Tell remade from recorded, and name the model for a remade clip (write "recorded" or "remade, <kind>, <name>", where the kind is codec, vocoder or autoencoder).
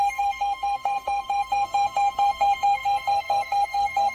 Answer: remade, codec, SNAC